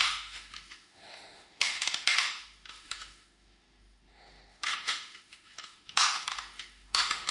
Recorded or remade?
remade